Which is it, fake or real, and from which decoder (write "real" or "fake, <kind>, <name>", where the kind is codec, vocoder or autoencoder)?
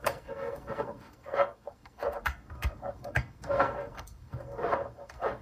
fake, codec, SNAC